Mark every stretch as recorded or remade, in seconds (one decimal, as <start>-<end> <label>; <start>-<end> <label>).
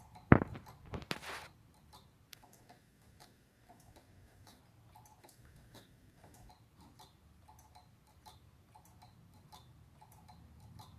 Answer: 0.0-2.3 recorded; 2.3-4.6 remade; 4.6-5.2 recorded; 5.2-6.5 remade; 6.5-11.0 recorded